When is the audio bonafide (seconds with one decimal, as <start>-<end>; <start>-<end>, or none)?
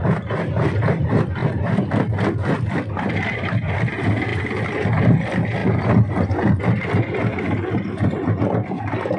0.0-9.2